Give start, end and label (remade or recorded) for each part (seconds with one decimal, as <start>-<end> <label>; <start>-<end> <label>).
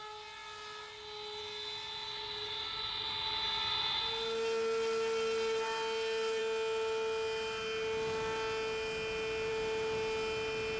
0.0-10.8 recorded